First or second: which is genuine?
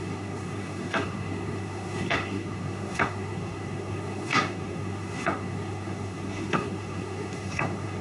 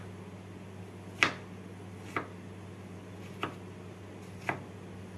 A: second